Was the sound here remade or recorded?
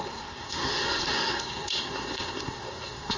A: remade